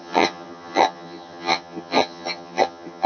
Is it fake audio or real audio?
fake